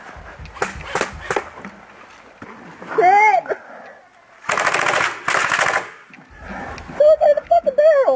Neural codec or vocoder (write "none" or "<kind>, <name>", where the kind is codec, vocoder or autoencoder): none